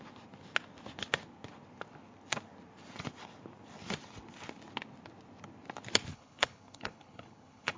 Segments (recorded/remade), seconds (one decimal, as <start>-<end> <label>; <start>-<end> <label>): 0.0-6.1 recorded; 6.1-7.8 remade